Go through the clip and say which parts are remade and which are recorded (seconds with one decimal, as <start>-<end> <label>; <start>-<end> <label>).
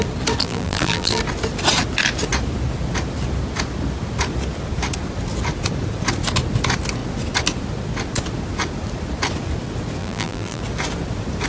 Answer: 0.0-0.4 recorded; 0.4-1.2 remade; 1.2-10.0 recorded; 10.0-10.6 remade; 10.6-11.5 recorded